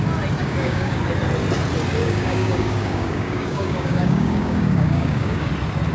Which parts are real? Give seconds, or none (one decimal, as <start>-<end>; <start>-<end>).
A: 0.0-0.4; 1.0-2.0; 5.5-5.9